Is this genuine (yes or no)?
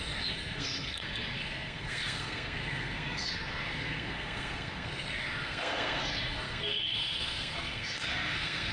no